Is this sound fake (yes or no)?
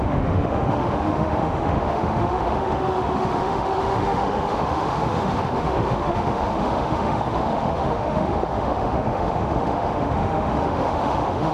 yes